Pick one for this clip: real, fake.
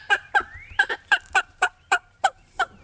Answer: fake